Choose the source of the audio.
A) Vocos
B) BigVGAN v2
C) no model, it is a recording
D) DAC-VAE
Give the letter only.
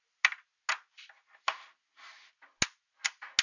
C